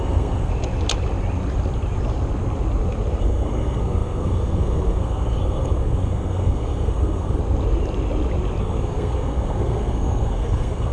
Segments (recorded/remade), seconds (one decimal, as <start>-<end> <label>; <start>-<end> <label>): 0.0-0.5 remade; 0.5-3.2 recorded; 3.2-7.4 remade; 7.4-8.6 recorded; 8.6-10.9 remade